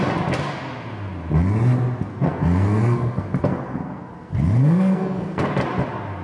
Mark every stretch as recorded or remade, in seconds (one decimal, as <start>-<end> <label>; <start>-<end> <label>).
0.0-2.1 recorded; 2.1-5.5 remade; 5.5-6.2 recorded